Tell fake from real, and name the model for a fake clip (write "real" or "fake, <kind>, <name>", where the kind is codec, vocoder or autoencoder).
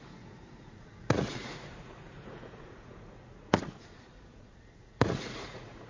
fake, vocoder, Vocos